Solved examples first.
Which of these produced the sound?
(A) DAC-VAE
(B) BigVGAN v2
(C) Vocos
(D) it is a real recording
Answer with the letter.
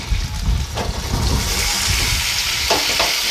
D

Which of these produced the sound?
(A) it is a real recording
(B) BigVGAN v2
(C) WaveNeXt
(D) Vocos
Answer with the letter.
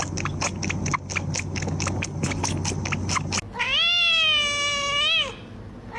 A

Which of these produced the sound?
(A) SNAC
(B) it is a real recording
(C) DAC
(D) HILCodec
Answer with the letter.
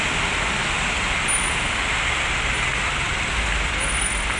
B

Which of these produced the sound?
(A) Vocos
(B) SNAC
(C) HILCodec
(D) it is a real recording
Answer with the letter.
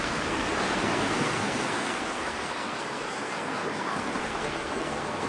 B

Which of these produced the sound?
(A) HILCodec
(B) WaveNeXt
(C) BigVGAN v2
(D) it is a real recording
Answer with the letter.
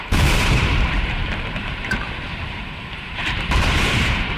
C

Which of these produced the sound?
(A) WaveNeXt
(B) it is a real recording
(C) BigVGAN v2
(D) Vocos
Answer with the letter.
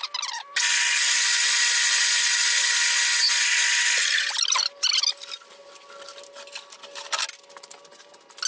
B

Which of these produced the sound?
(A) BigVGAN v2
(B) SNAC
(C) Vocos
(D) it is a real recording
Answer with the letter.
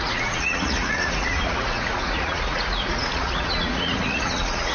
C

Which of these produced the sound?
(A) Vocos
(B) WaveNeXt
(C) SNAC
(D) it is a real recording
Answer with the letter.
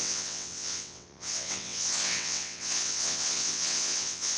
B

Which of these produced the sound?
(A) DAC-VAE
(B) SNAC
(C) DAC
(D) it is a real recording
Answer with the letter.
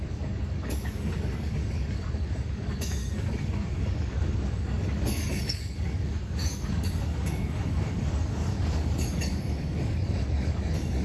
C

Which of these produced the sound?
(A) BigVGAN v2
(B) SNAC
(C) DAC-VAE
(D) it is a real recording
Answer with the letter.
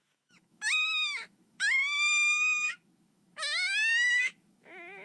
C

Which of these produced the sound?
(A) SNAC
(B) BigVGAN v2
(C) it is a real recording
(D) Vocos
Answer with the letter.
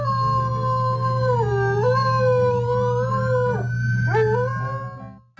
C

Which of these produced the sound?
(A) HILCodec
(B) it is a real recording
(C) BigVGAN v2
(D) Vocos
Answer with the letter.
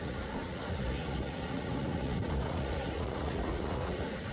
D